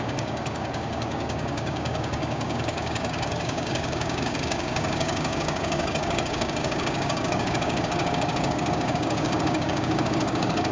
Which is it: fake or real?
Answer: fake